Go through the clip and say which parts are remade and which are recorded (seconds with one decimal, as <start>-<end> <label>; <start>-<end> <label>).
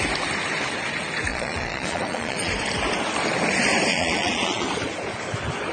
0.0-1.3 recorded; 1.3-2.5 remade; 2.5-3.9 recorded; 3.9-4.7 remade; 4.7-5.7 recorded